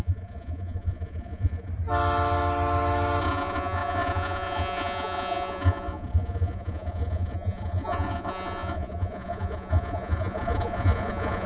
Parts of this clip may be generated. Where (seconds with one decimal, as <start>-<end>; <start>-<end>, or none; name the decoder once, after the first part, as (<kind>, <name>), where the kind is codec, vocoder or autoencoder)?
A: 0.0-1.7 (vocoder, Vocos); 3.2-11.5